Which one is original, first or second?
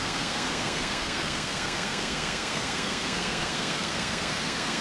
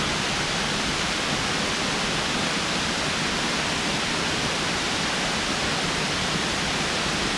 second